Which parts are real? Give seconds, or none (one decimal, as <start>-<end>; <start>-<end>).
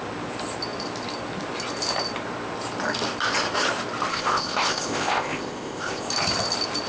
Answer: 0.0-4.1; 6.1-6.9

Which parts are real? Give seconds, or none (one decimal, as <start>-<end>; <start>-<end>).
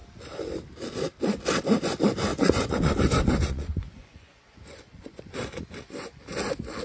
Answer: 0.0-2.3; 6.2-6.8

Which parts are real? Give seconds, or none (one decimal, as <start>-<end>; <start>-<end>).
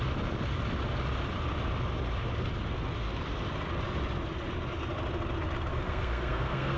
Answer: 0.0-5.7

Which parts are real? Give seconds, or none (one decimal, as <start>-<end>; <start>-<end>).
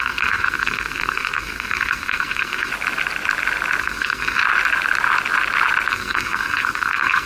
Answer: 2.7-3.8; 4.4-5.9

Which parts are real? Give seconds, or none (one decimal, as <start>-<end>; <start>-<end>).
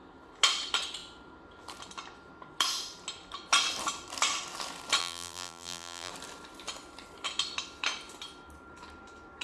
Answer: 0.0-5.0; 6.1-9.4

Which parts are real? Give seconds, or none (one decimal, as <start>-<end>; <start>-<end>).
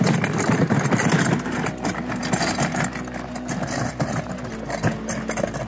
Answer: 0.0-5.7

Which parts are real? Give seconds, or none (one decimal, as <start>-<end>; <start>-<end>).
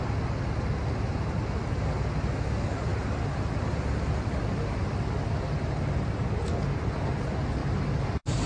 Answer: 0.0-8.5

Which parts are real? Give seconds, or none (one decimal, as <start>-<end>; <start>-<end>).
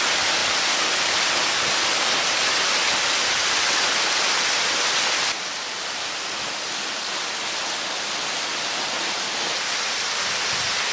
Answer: 0.0-10.9